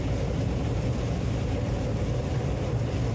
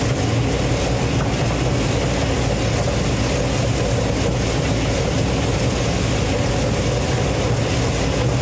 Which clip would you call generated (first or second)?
first